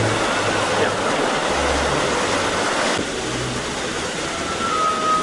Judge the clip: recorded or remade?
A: recorded